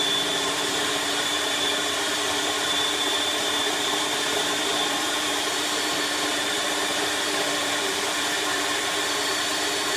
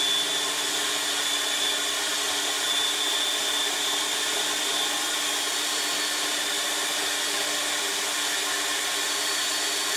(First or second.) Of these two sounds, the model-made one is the first